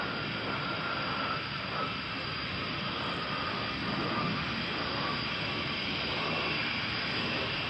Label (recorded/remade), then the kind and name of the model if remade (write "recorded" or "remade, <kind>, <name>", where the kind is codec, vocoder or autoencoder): recorded